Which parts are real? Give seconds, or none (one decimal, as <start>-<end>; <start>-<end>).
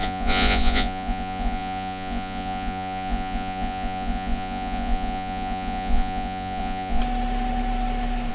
7.0-8.3